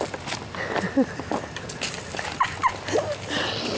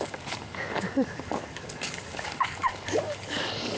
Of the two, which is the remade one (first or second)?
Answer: second